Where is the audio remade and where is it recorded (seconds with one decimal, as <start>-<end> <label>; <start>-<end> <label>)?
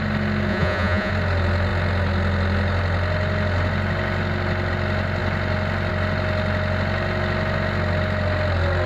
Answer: 0.0-0.5 recorded; 0.5-1.1 remade; 1.1-8.9 recorded